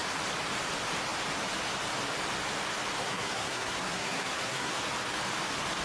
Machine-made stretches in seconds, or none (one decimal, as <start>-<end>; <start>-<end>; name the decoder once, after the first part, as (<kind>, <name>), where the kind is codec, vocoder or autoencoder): 3.0-4.8 (codec, SNAC)